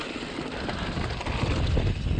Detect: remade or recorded recorded